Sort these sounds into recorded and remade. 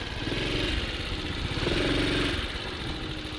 recorded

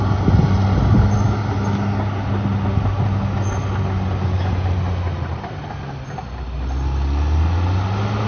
recorded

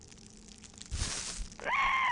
recorded